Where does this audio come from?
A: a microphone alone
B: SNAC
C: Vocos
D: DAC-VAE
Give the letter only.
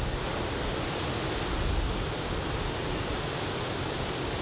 A